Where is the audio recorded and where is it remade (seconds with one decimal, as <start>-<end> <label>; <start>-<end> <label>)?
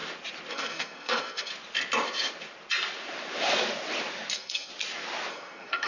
0.0-0.5 recorded; 0.5-1.5 remade; 1.5-4.3 recorded; 4.3-4.7 remade; 4.7-5.3 recorded; 5.3-5.9 remade